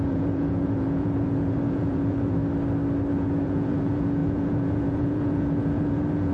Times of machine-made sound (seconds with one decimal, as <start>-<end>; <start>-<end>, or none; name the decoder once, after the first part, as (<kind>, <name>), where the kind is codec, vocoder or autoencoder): 0.0-2.4 (vocoder, Vocos); 3.1-6.3